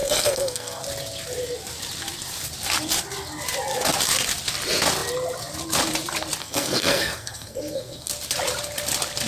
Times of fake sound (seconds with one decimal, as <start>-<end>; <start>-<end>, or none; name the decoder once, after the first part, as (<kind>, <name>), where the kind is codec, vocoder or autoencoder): 0.0-0.8 (codec, SNAC); 6.4-8.1